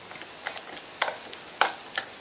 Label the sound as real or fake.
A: real